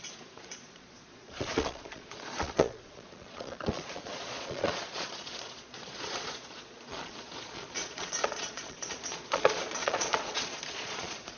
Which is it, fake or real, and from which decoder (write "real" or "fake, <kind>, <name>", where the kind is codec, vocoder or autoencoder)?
fake, vocoder, Vocos